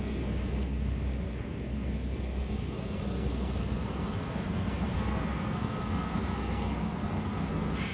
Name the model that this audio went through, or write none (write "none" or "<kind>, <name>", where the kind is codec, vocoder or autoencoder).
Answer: codec, SNAC